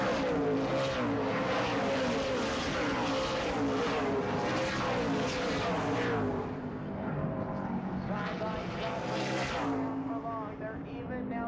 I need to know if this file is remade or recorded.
recorded